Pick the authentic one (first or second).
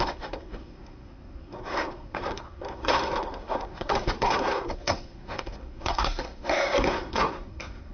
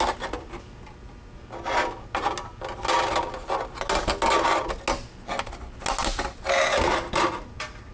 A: second